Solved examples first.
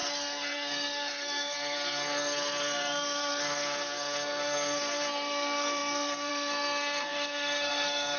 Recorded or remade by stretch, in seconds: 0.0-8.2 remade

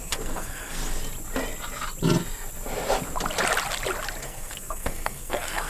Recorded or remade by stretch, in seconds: 0.0-0.8 remade; 0.8-4.2 recorded; 4.2-5.7 remade